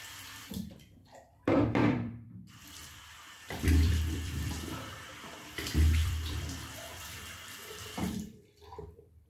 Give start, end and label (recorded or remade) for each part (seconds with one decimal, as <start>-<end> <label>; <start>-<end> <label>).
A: 0.0-9.3 remade